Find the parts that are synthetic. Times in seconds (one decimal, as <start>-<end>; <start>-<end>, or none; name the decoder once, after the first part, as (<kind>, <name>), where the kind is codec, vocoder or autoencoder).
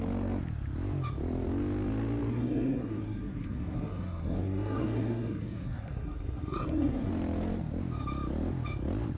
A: 2.3-7.1 (codec, SNAC)